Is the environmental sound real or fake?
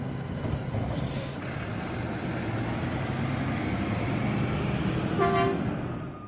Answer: real